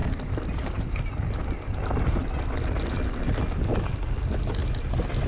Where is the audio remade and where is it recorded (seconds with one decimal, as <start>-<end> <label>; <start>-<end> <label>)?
0.0-5.3 recorded